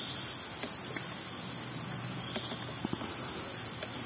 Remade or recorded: recorded